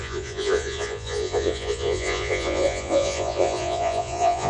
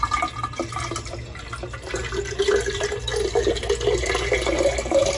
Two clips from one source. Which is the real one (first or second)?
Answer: second